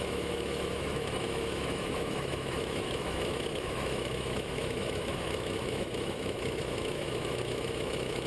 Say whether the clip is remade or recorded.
remade